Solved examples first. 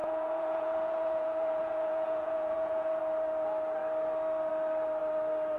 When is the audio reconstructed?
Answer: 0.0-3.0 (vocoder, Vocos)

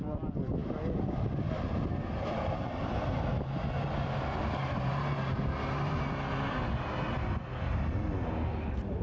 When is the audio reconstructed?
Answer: none

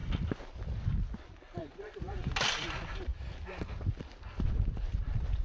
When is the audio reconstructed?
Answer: 1.6-2.3 (vocoder, Vocos)

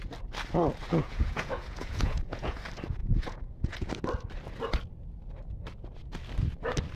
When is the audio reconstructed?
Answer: 1.0-2.6 (vocoder, Vocos); 3.0-3.9

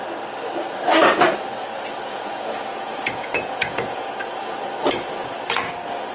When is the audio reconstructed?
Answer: 2.1-4.6 (vocoder, Vocos)

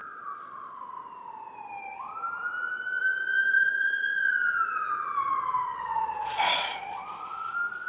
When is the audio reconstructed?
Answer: 0.0-0.8 (vocoder, Vocos); 3.5-7.5

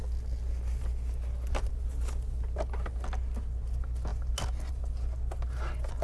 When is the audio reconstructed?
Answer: none